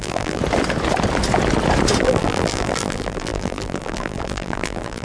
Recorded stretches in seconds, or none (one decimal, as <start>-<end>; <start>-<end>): 0.4-2.0